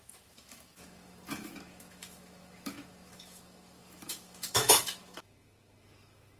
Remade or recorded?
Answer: remade